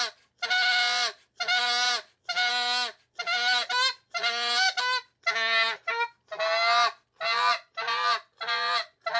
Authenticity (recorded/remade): recorded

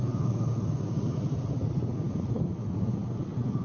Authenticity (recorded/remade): recorded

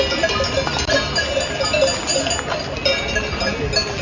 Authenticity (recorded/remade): recorded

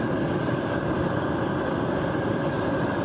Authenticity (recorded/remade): recorded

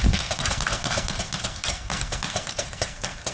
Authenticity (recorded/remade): remade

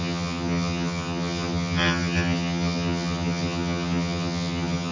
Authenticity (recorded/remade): remade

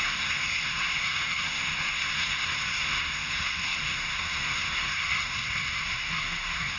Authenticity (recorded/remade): remade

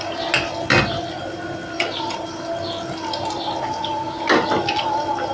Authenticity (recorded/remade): recorded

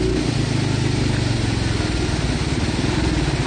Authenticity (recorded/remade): recorded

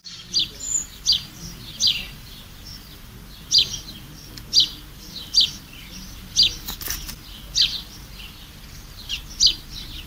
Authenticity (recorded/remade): recorded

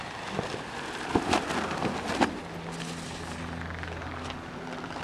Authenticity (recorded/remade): recorded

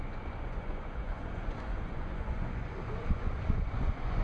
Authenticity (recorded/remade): remade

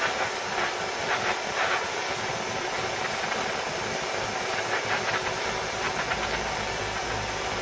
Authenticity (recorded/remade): recorded